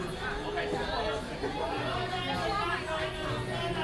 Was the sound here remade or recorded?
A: recorded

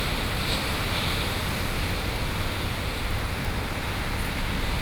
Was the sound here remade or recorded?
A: recorded